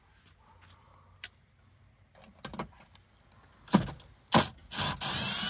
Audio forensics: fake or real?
real